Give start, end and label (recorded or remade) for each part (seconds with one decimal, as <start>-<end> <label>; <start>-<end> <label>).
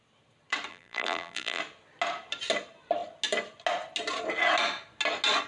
0.0-0.7 recorded; 0.7-1.6 remade; 1.6-5.5 recorded